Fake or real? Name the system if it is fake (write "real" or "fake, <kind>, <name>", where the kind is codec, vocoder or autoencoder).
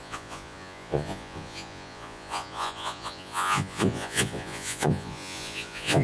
fake, vocoder, Vocos